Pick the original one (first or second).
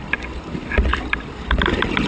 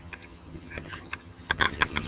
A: first